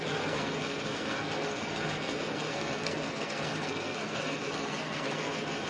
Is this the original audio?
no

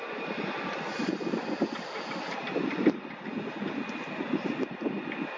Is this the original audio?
yes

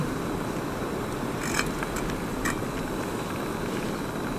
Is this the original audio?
yes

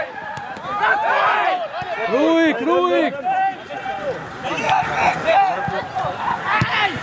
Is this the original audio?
yes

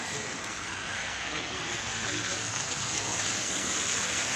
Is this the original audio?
no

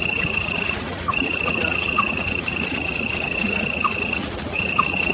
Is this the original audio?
no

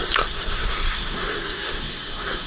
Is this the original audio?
no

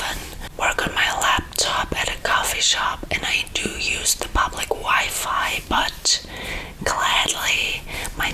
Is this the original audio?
no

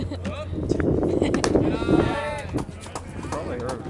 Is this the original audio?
yes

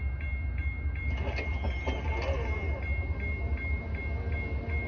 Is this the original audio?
yes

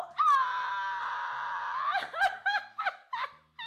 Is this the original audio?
yes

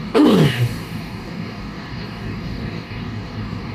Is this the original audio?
no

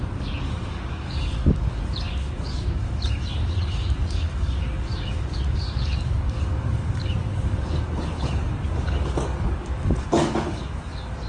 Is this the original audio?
no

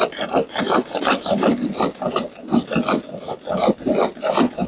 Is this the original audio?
yes